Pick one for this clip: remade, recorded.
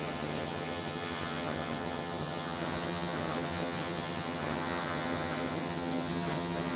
remade